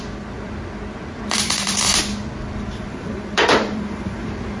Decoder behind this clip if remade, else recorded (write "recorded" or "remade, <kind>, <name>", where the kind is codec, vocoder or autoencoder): remade, vocoder, BigVGAN v2